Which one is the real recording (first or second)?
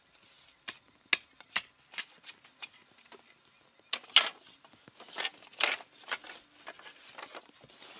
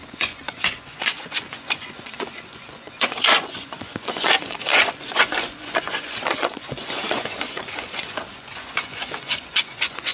first